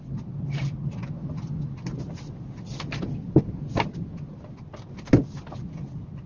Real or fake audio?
real